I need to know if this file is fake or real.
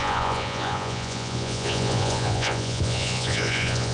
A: fake